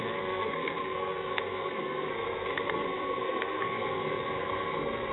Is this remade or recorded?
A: remade